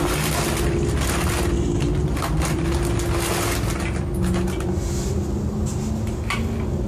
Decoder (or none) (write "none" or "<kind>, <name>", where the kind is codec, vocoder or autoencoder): none